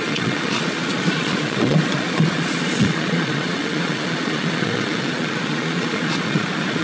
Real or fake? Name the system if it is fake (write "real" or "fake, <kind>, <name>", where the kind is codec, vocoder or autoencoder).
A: fake, vocoder, Vocos